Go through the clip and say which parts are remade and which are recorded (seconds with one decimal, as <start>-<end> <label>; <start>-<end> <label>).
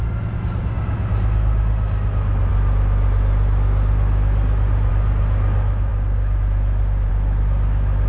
0.0-8.1 recorded